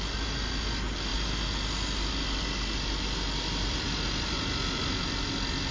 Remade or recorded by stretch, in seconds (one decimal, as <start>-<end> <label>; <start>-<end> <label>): 0.0-5.7 recorded